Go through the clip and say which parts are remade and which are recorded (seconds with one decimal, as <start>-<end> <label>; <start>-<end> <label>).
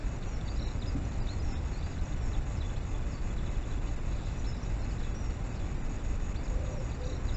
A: 0.0-7.4 recorded